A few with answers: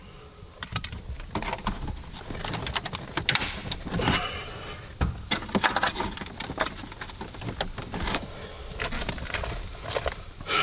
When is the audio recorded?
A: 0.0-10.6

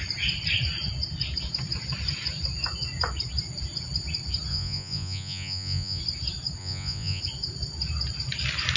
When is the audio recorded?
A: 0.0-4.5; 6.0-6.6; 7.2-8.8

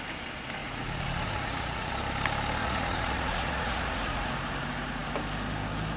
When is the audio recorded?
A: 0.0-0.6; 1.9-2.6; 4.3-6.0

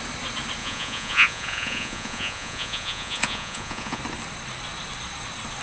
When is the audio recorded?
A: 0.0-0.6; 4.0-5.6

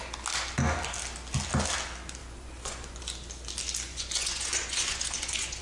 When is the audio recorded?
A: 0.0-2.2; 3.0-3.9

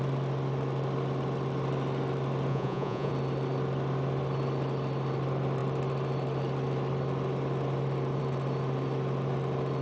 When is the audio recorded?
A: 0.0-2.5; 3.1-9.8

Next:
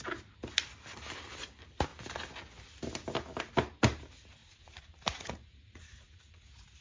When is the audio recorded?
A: 0.0-4.4